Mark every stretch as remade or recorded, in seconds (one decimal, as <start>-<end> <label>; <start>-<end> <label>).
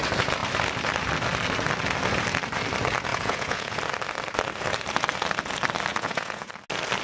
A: 0.0-3.1 recorded; 3.1-3.8 remade; 3.8-5.9 recorded; 5.9-6.5 remade; 6.5-7.0 recorded